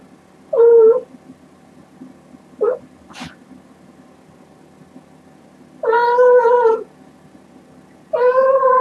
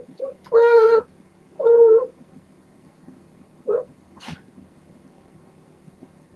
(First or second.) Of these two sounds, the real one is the first